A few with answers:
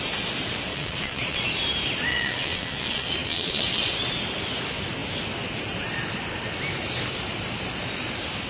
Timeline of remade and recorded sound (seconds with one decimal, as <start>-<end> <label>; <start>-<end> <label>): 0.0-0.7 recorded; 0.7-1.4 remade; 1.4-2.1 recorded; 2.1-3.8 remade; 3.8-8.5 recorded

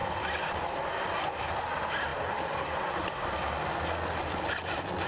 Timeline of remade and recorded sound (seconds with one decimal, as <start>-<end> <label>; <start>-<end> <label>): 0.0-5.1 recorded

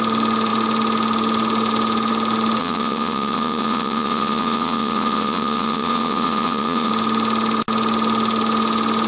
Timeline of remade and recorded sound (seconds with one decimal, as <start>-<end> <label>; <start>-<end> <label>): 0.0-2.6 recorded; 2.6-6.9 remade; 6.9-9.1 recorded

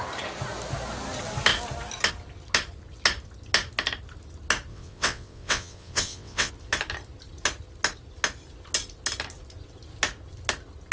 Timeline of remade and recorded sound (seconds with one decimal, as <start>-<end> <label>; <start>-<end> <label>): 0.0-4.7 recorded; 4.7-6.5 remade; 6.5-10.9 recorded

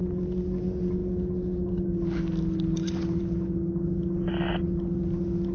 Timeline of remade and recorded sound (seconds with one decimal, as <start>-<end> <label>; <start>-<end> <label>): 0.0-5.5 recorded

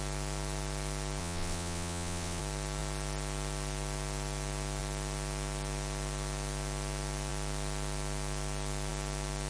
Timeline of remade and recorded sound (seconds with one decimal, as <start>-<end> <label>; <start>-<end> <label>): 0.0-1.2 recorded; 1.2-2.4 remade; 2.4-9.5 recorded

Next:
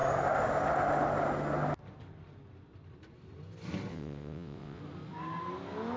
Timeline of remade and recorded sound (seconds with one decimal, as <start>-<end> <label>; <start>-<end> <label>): 0.0-3.9 recorded; 3.9-4.8 remade; 4.8-6.0 recorded